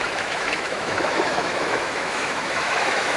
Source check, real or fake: fake